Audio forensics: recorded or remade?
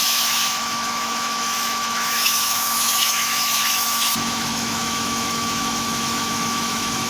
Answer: remade